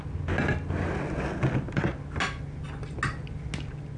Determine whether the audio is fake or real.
real